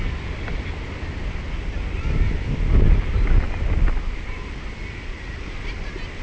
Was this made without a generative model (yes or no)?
yes